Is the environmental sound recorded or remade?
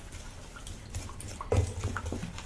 recorded